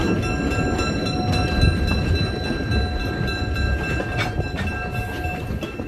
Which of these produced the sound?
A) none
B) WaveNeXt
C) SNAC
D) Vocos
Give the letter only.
A